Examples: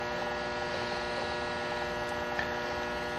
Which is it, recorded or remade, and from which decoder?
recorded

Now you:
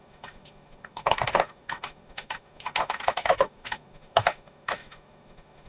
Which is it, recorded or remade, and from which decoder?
remade, autoencoder, DAC-VAE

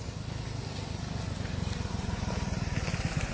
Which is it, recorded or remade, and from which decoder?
recorded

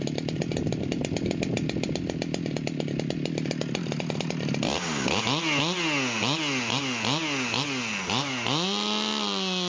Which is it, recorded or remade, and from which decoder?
recorded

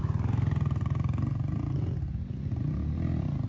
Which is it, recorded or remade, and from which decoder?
recorded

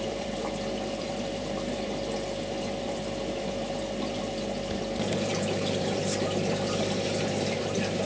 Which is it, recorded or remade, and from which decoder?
remade, vocoder, BigVGAN v2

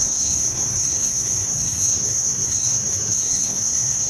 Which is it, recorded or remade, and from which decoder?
remade, codec, SNAC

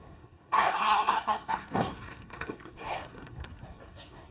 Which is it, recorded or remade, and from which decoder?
remade, codec, SNAC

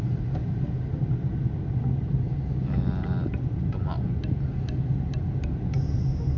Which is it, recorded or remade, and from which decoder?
recorded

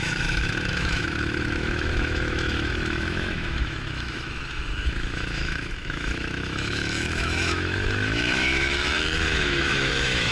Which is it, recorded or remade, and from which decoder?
remade, autoencoder, DAC-VAE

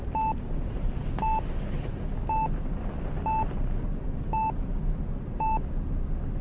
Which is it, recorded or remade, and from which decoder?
recorded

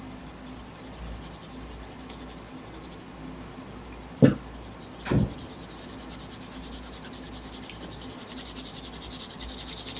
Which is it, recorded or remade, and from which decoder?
recorded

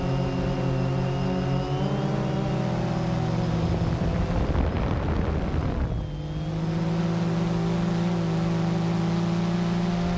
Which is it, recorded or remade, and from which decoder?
recorded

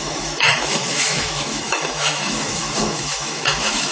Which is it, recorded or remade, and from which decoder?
remade, autoencoder, DAC-VAE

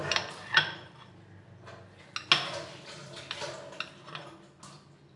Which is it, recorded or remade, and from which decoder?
recorded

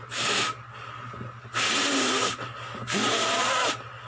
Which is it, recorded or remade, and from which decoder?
recorded